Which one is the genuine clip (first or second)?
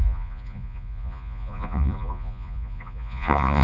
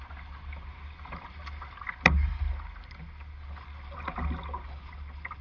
second